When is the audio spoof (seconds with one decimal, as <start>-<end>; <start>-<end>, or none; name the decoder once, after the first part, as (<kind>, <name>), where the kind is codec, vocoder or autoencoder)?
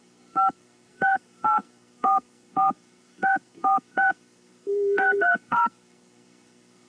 0.0-6.9 (codec, SNAC)